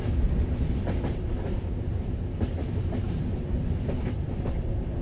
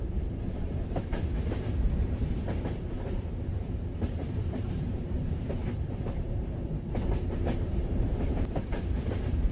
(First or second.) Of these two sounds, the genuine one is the first